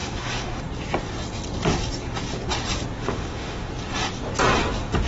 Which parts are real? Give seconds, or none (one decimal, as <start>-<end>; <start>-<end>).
0.6-3.0; 3.7-5.1